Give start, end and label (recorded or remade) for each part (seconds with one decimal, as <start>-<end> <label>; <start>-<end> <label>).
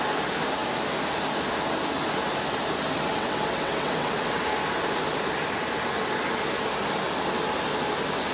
0.0-3.1 recorded; 3.1-4.4 remade; 4.4-8.3 recorded